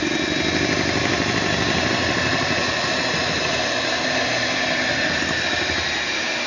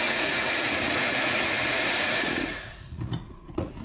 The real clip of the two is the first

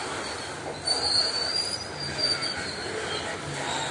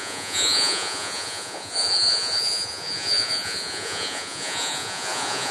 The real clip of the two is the first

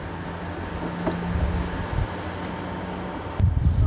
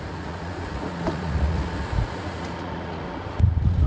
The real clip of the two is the first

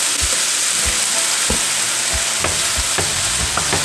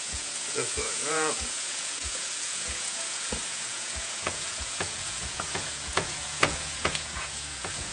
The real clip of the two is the first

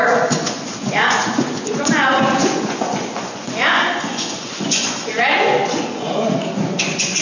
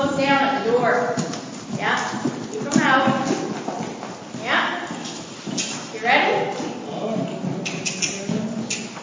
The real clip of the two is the second